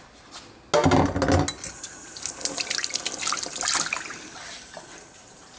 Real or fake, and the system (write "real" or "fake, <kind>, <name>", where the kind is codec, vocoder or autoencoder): real